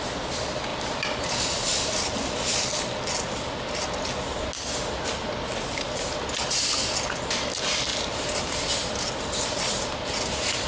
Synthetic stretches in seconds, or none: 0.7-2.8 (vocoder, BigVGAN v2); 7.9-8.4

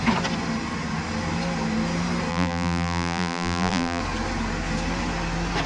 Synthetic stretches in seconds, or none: 2.3-4.0 (vocoder, BigVGAN v2)

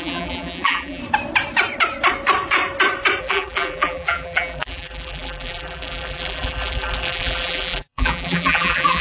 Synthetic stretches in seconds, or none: 0.0-1.0 (vocoder, BigVGAN v2); 3.2-9.0

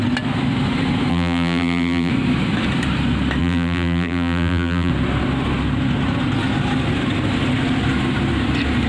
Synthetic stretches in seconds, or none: 1.1-2.1 (vocoder, BigVGAN v2); 3.4-4.9

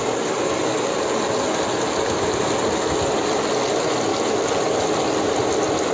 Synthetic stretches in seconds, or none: none